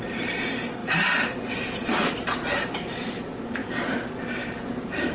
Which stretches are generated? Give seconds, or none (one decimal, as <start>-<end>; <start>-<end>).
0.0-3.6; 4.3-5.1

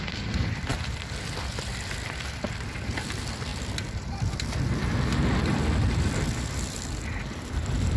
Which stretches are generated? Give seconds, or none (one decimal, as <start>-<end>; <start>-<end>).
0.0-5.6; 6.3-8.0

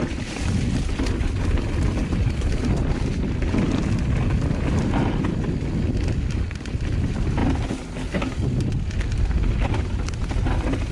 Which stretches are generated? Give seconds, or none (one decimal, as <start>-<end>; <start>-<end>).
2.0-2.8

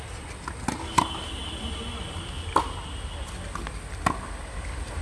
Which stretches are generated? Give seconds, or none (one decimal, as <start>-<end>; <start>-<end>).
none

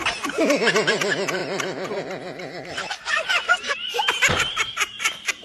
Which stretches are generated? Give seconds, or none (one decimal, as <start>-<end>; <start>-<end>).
0.0-5.4